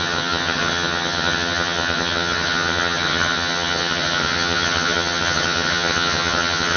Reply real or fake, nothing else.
fake